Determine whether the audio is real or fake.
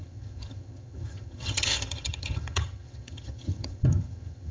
fake